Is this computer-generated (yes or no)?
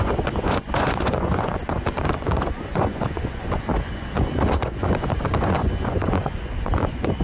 yes